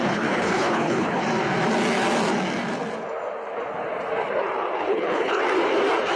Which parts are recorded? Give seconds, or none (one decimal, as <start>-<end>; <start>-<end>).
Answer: 1.2-4.9; 5.4-6.2